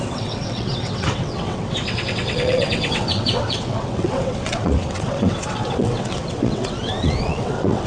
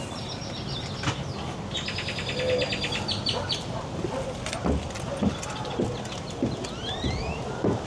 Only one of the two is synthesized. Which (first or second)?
first